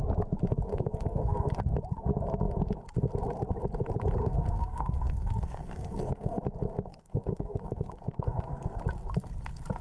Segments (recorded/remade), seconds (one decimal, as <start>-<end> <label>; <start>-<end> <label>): 0.0-0.7 recorded; 0.7-1.5 remade; 1.5-4.2 recorded; 4.2-6.4 remade; 6.4-6.9 recorded; 6.9-8.8 remade; 8.8-9.8 recorded